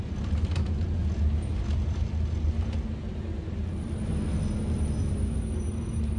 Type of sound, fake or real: real